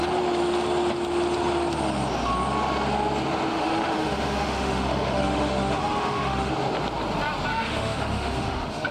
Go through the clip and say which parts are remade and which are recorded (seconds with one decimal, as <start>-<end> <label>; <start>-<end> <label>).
0.0-3.5 recorded; 3.5-6.5 remade; 6.5-7.5 recorded; 7.5-8.9 remade

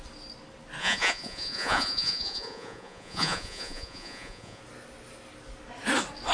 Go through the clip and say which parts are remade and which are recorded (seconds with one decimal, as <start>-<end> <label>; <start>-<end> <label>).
0.0-0.8 recorded; 0.8-4.6 remade; 4.6-6.3 recorded

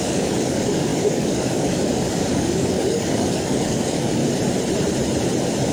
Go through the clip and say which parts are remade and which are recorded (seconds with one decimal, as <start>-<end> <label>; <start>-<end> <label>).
0.0-4.2 remade; 4.2-5.7 recorded

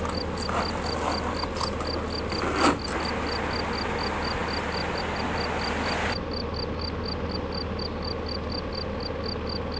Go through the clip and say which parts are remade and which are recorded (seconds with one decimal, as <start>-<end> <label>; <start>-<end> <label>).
0.0-9.8 recorded

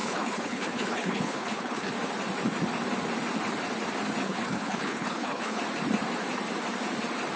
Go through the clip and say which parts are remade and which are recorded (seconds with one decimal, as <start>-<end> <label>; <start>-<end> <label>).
0.0-1.9 remade; 1.9-4.2 recorded; 4.2-5.6 remade; 5.6-7.4 recorded

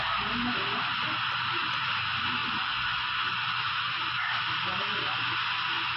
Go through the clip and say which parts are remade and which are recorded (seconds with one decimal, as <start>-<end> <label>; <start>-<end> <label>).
0.0-6.0 recorded

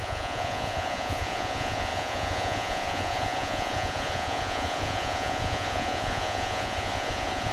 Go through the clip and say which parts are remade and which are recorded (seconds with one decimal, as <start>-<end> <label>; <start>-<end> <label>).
0.0-7.5 remade